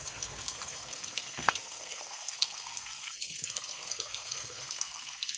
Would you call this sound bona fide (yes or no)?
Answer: no